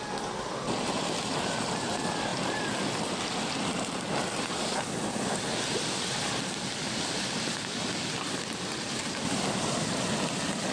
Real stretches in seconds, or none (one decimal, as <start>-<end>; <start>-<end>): 0.0-10.7